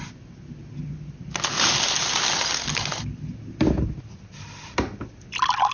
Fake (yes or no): no